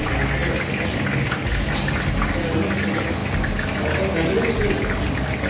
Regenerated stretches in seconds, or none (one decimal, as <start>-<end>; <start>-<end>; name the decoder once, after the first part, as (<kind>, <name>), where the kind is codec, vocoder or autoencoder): none